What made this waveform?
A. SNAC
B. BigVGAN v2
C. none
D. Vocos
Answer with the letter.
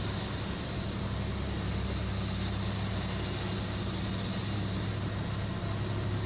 C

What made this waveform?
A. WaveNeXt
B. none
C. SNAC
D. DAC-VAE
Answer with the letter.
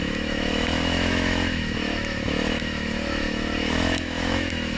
D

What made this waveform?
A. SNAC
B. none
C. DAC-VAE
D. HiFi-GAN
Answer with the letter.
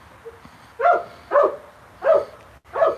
B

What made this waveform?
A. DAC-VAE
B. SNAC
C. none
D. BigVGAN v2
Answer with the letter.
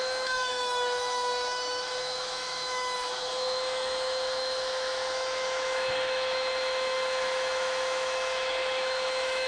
A